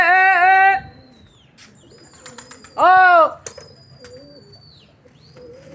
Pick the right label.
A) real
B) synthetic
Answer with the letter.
A